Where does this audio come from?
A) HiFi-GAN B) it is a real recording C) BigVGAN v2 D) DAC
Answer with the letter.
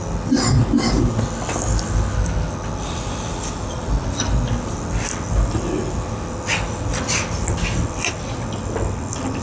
B